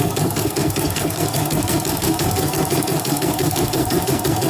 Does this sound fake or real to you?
fake